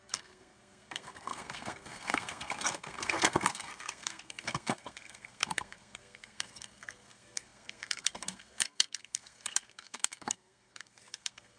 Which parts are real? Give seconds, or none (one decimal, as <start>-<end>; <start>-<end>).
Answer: none